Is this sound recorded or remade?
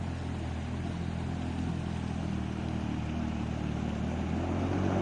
recorded